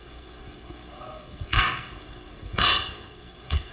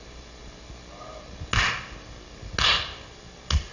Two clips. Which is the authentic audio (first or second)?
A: second